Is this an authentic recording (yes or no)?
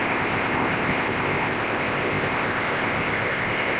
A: no